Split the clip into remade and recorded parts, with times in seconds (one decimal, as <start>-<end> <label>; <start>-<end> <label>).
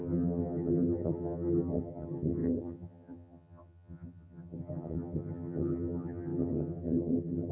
0.0-7.5 remade